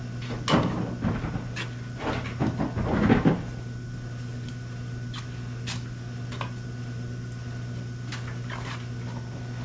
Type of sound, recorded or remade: recorded